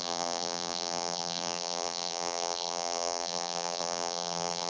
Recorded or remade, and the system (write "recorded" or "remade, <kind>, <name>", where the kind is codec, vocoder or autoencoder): remade, vocoder, BigVGAN v2